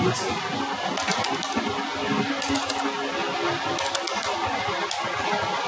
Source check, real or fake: real